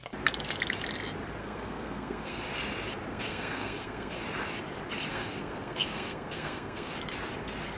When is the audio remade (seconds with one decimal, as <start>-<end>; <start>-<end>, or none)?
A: 1.4-2.4; 3.1-4.2; 5.1-6.9